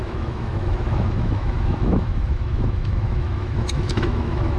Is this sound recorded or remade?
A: remade